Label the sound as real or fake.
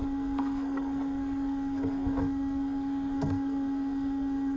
fake